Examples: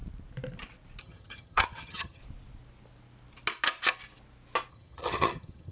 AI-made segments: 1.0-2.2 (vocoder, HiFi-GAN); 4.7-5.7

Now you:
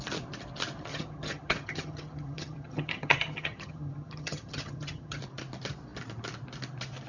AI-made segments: 0.9-5.2 (vocoder, HiFi-GAN)

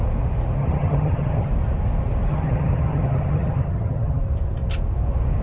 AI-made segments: 0.6-1.5 (vocoder, HiFi-GAN); 2.3-4.2

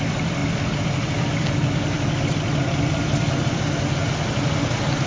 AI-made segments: none

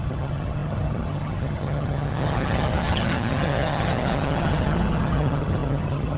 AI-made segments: 0.0-6.2 (vocoder, HiFi-GAN)

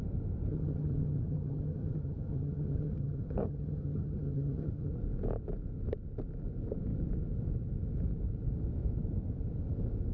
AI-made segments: 0.5-4.9 (vocoder, HiFi-GAN)

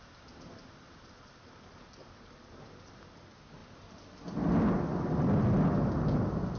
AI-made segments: none